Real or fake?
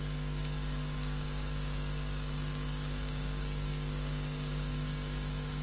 fake